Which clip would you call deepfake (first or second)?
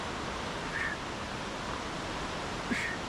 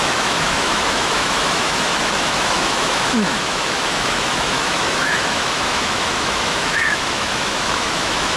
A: second